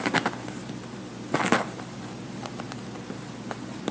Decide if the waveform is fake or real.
real